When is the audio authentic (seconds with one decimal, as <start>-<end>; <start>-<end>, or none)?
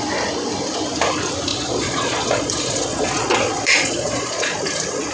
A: 0.0-1.5; 4.6-5.1